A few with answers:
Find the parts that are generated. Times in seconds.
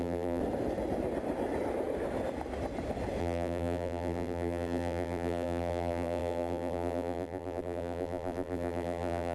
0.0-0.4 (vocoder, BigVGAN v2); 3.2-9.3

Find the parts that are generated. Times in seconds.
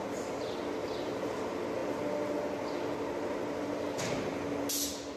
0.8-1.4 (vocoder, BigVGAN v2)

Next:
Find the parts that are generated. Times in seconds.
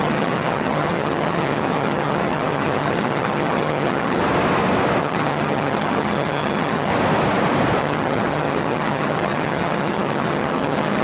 0.0-4.2 (vocoder, HiFi-GAN); 5.0-6.9; 7.8-11.0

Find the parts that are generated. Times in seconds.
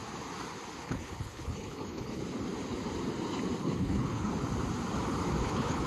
0.8-2.2 (codec, HILCodec); 3.6-4.3; 5.4-5.9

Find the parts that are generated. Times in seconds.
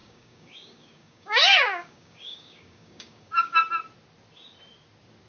0.0-3.6 (codec, DAC)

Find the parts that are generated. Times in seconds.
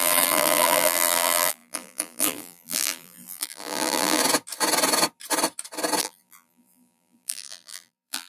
0.0-4.2 (vocoder, BigVGAN v2); 6.0-8.3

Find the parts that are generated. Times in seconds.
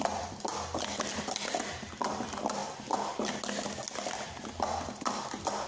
0.0-0.5 (vocoder, BigVGAN v2)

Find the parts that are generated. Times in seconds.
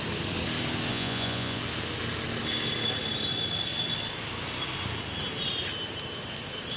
0.9-1.6 (vocoder, Vocos)